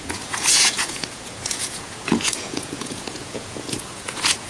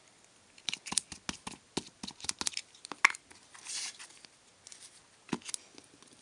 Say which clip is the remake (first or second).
first